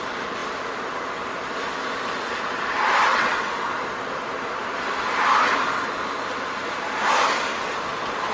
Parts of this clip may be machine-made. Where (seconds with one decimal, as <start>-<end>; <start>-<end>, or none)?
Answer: 3.1-3.7